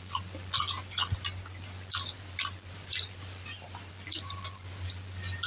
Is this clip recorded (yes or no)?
yes